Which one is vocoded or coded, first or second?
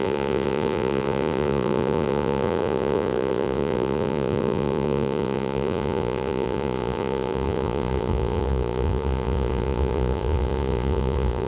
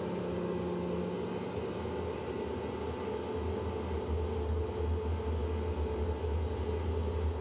first